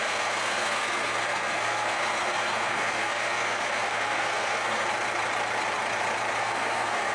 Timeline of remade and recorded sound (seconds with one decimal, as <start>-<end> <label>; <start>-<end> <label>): 0.0-4.9 remade; 4.9-6.4 recorded; 6.4-7.1 remade

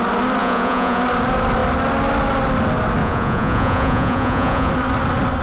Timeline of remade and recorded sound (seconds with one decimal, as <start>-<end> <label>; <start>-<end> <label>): 0.0-0.4 recorded; 0.4-1.0 remade; 1.0-3.0 recorded; 3.0-4.7 remade; 4.7-5.4 recorded